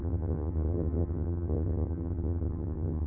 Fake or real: fake